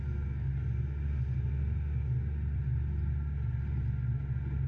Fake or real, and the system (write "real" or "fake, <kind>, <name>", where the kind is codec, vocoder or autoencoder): real